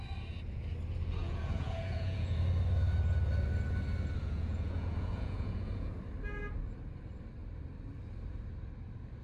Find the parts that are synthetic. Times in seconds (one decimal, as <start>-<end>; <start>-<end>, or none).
1.2-2.4; 4.2-6.0